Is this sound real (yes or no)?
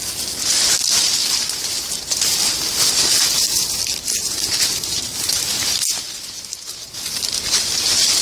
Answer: yes